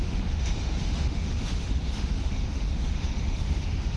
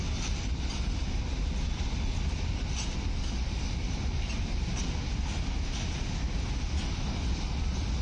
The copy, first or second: first